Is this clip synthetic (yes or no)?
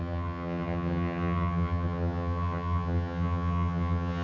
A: yes